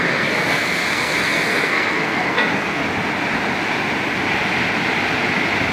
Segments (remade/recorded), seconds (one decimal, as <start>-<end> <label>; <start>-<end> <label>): 0.0-2.8 remade; 2.8-5.7 recorded